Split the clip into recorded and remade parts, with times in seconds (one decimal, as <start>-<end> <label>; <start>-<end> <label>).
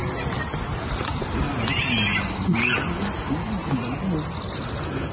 0.0-5.1 recorded